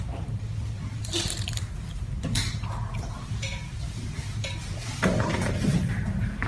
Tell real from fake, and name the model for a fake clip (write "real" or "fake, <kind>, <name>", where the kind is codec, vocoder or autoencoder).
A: real